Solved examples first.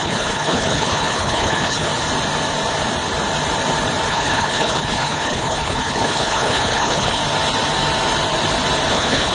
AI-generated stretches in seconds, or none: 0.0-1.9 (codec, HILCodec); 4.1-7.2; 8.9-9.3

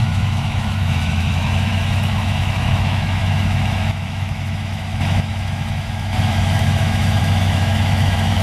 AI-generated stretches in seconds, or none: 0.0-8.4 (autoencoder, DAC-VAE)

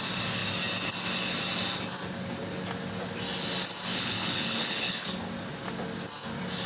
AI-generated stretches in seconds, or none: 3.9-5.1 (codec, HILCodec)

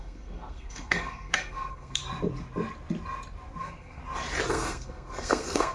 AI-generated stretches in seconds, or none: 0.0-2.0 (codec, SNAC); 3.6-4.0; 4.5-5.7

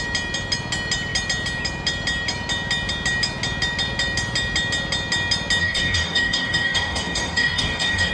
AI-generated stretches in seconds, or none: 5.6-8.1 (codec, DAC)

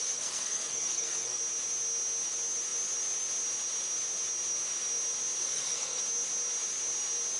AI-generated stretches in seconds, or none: 0.0-1.4 (codec, SNAC); 5.4-6.0